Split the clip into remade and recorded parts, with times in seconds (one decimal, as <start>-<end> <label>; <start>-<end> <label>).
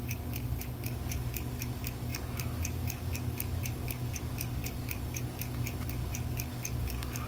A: 0.0-7.3 remade